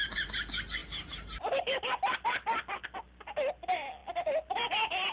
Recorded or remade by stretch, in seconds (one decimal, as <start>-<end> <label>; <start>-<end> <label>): 0.0-5.1 recorded